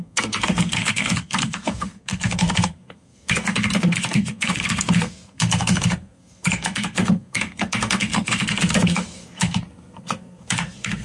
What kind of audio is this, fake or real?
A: fake